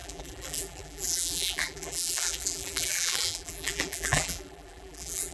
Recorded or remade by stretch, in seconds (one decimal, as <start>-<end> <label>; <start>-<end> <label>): 0.0-5.3 remade